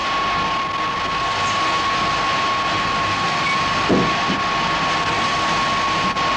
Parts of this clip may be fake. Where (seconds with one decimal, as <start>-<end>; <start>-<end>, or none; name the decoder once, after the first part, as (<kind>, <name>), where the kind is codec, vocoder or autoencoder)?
none